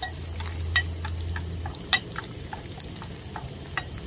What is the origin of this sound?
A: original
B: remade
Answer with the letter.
A